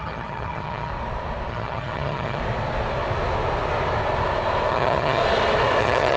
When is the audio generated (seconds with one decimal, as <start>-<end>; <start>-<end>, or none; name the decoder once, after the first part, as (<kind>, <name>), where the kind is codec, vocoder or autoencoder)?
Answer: 0.0-0.9 (vocoder, HiFi-GAN); 1.5-2.4; 4.7-5.2; 5.8-6.2